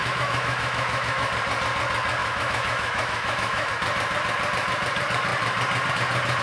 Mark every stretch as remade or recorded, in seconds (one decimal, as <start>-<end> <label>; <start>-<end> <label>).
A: 0.0-1.3 remade; 1.3-2.2 recorded; 2.2-3.7 remade; 3.7-6.4 recorded